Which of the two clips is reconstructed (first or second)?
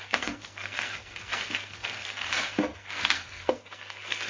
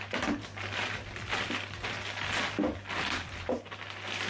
first